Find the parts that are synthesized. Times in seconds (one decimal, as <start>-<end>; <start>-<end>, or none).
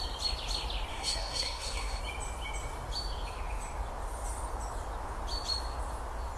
0.9-2.0